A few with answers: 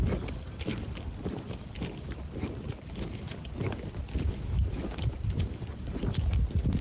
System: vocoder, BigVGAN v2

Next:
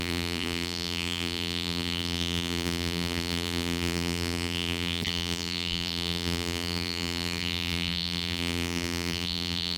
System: vocoder, BigVGAN v2